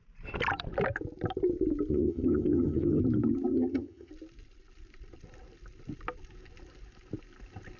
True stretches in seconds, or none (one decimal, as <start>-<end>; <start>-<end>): 0.0-1.9; 3.0-3.5; 4.1-7.8

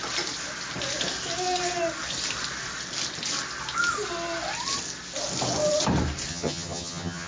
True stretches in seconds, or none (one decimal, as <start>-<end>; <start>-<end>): 0.0-6.3